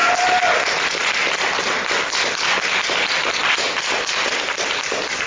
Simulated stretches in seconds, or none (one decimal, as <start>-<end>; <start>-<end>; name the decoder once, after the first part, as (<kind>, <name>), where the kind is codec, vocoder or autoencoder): none

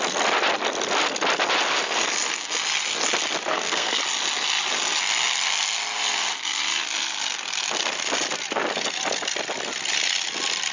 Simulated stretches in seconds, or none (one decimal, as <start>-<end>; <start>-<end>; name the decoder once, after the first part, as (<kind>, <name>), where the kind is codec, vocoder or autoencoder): 3.5-4.0 (codec, SNAC)